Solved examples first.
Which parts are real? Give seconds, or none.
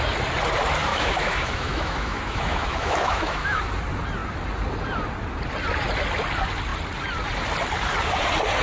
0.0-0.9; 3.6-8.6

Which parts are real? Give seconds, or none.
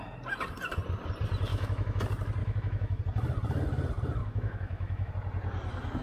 0.0-1.5; 2.0-2.4; 3.0-4.2; 5.1-6.0